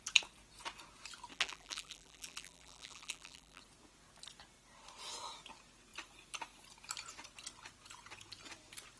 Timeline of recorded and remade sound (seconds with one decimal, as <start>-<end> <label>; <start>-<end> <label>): 0.0-1.3 recorded; 1.3-3.6 remade; 3.6-9.0 recorded